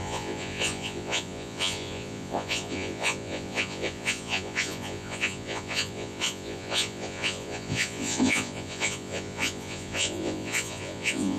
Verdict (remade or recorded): remade